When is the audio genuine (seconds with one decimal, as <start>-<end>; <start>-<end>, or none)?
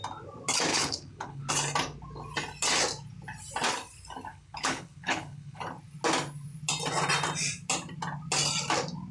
0.0-0.7; 1.5-4.3; 5.6-9.1